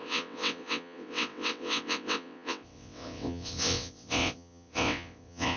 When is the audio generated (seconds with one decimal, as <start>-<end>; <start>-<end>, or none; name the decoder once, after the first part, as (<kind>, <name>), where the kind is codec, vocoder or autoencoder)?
0.0-5.6 (vocoder, WaveNeXt)